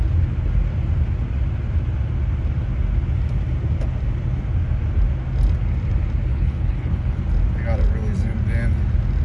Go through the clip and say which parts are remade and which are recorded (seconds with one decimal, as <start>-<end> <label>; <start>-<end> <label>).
0.0-6.3 recorded; 6.3-7.2 remade; 7.2-9.2 recorded